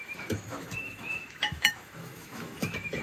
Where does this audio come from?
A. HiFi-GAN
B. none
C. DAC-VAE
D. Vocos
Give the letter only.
C